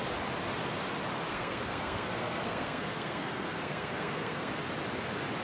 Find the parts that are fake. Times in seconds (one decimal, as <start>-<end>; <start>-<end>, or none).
1.3-4.5